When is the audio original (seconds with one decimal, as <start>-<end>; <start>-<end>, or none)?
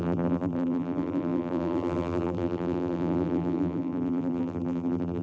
none